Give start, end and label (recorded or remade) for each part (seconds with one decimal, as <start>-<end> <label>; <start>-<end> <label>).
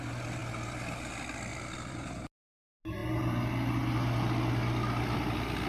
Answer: 0.0-1.5 recorded; 1.5-2.6 remade; 2.6-5.7 recorded